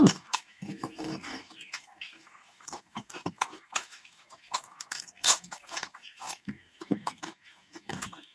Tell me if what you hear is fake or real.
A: fake